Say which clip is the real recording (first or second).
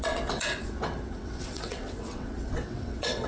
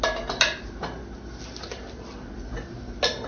second